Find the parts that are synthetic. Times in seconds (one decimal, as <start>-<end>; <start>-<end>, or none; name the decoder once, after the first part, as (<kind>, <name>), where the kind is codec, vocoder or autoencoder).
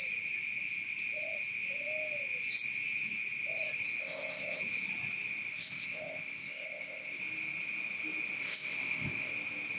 4.0-4.6 (codec, ZipCodec); 5.5-7.2; 8.4-9.3